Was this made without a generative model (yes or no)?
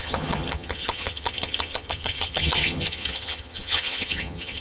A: no